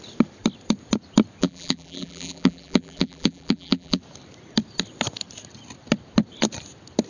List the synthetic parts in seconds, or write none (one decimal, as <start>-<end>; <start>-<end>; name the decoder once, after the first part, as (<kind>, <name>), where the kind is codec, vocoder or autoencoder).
1.4-4.0 (vocoder, BigVGAN v2)